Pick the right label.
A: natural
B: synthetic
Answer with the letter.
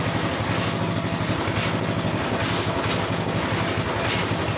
A